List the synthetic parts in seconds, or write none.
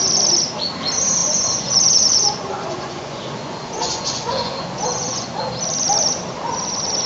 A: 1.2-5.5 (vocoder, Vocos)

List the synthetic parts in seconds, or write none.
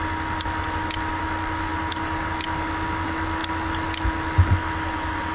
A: none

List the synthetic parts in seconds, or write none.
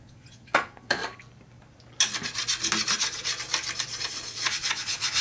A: 0.0-1.0 (vocoder, Vocos); 4.1-5.2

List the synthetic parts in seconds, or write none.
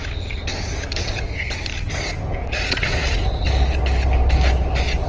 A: 1.0-1.5 (vocoder, Vocos); 2.4-3.5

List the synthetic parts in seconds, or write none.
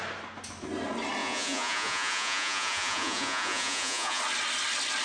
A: 1.2-4.2 (vocoder, Vocos)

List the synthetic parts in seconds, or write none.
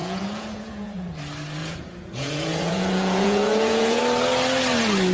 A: 0.0-1.2 (vocoder, Vocos); 1.6-4.0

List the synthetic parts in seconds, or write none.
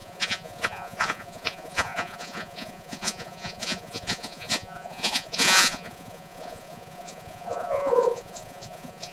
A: 0.0-9.1 (vocoder, Vocos)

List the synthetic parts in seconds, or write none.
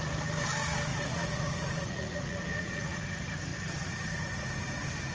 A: 0.9-3.0 (vocoder, Vocos)